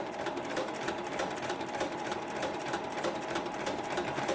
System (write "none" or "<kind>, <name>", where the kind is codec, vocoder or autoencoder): vocoder, BigVGAN v2